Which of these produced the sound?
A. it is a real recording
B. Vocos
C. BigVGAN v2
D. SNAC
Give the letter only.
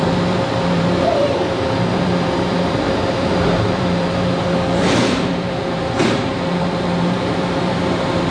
C